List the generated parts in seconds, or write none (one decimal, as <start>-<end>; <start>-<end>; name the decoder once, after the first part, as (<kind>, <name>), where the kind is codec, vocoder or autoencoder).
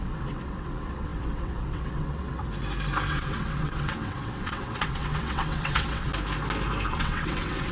0.0-2.5 (vocoder, WaveNeXt); 3.1-6.1; 6.9-7.7